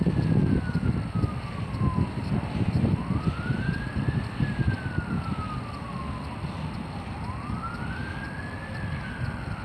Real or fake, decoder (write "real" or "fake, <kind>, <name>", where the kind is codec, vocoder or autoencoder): real